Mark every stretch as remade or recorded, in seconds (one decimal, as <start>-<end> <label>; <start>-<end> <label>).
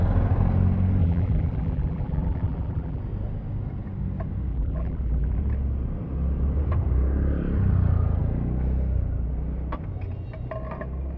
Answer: 0.0-1.0 recorded; 1.0-3.0 remade; 3.0-4.5 recorded; 4.5-5.4 remade; 5.4-11.2 recorded